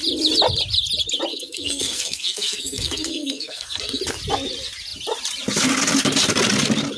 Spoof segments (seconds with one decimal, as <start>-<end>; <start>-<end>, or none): 1.3-4.0